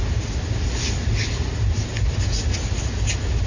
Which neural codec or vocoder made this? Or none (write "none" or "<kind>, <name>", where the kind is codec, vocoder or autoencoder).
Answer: none